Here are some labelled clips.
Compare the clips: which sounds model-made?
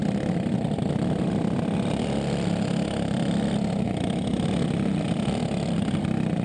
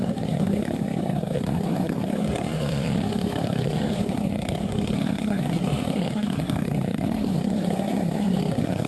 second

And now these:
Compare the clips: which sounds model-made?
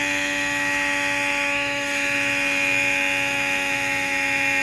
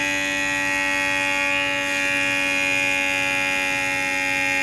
first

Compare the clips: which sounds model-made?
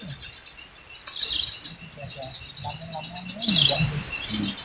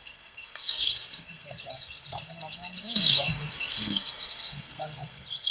second